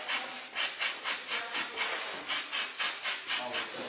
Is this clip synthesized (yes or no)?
no